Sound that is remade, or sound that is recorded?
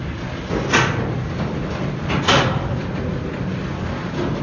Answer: recorded